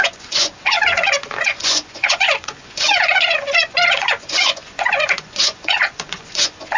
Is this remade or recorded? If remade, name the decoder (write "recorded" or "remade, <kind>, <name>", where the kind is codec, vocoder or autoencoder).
remade, vocoder, Vocos